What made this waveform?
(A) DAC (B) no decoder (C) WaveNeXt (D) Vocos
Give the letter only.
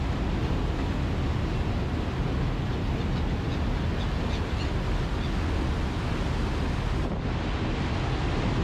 B